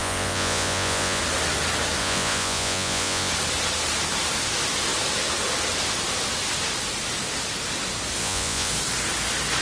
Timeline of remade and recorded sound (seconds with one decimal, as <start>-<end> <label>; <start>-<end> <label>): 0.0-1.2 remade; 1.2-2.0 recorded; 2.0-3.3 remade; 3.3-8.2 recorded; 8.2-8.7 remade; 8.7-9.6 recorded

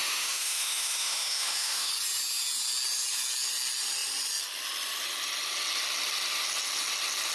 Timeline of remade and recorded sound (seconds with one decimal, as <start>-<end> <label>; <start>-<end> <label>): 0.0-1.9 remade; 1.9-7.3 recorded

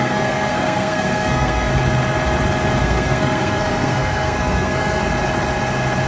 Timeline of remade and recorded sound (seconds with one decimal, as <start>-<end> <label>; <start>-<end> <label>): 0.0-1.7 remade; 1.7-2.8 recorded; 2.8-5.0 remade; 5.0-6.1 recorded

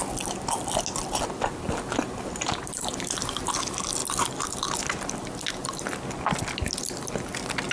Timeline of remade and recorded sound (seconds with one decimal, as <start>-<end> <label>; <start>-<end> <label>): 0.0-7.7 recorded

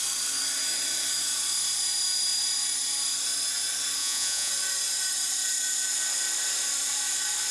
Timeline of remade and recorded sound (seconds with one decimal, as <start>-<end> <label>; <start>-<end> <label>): 0.0-4.0 recorded; 4.0-4.5 remade; 4.5-7.5 recorded

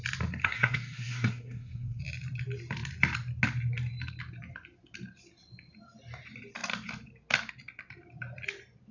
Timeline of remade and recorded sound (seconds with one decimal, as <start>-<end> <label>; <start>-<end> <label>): 0.0-0.4 recorded; 0.4-2.0 remade; 2.0-8.9 recorded

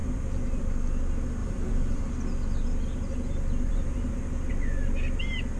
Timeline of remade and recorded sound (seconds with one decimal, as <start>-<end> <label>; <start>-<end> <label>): 0.0-1.4 recorded; 1.4-2.1 remade; 2.1-3.7 recorded; 3.7-4.5 remade; 4.5-5.6 recorded

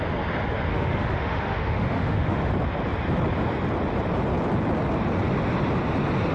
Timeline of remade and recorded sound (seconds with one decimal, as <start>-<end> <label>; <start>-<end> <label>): 0.0-0.7 recorded; 0.7-2.5 remade; 2.5-6.3 recorded